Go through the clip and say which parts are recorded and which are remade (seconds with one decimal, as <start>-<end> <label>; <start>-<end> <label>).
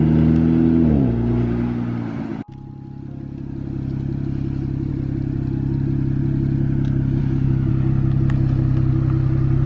0.0-7.2 recorded; 7.2-7.7 remade; 7.7-9.7 recorded